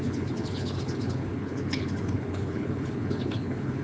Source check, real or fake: fake